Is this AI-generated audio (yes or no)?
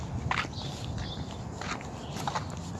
no